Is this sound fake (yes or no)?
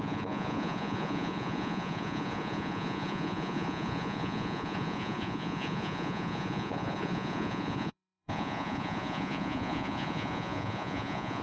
yes